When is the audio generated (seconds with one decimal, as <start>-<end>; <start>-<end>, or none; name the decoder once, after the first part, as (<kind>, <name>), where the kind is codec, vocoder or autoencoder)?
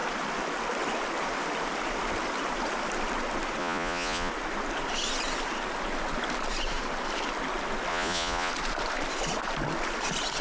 3.6-4.3 (vocoder, Vocos); 7.9-8.5